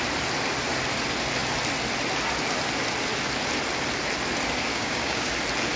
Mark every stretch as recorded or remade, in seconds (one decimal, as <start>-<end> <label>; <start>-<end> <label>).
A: 0.0-4.7 recorded; 4.7-5.3 remade; 5.3-5.8 recorded